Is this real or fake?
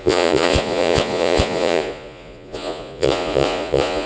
fake